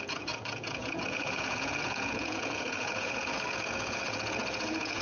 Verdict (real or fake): fake